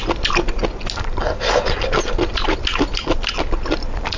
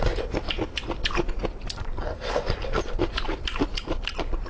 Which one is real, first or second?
first